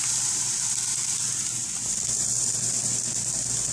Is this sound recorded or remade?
remade